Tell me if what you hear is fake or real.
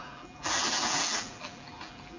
fake